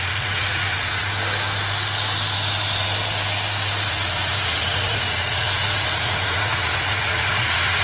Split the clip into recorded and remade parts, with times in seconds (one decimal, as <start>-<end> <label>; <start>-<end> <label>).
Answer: 0.0-1.0 remade; 1.0-3.9 recorded; 3.9-7.8 remade